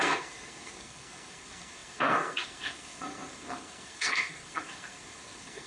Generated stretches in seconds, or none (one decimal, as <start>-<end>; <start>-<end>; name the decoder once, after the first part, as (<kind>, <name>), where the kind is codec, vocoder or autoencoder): 0.0-5.7 (codec, SNAC)